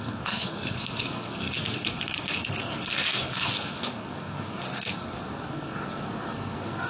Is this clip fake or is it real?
fake